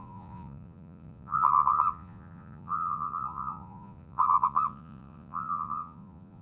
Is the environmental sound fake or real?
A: fake